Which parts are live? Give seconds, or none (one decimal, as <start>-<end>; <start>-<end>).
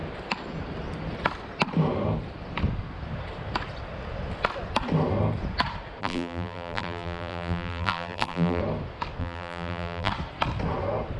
0.0-6.0; 8.6-9.2; 10.1-11.2